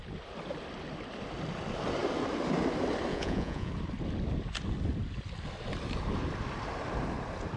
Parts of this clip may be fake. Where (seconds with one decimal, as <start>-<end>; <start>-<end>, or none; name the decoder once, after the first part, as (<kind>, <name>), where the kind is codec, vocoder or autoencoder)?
3.1-3.7 (vocoder, Vocos)